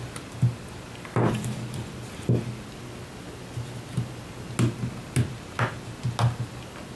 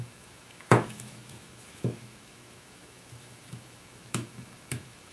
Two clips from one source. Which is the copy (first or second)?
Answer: second